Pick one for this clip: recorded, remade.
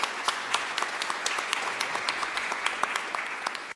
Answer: remade